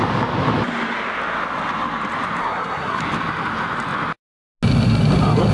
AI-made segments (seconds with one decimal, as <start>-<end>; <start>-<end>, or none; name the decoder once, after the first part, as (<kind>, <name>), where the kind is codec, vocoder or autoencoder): 2.4-3.0 (codec, SNAC)